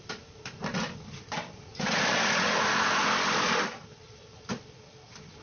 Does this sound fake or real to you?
real